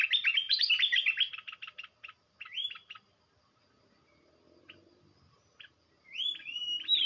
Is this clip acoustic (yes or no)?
yes